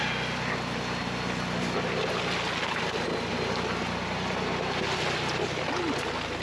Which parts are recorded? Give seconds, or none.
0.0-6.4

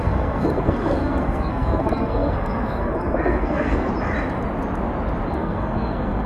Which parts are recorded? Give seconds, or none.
3.9-5.3

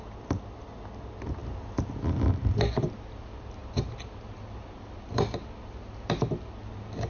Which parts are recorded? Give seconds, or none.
0.0-7.1

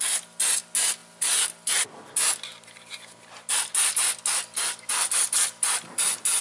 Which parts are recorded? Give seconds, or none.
0.0-6.4

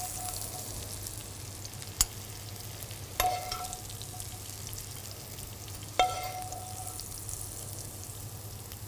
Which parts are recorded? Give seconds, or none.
0.0-8.9